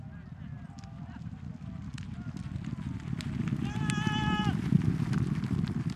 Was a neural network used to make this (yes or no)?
no